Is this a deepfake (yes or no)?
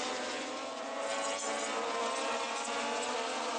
no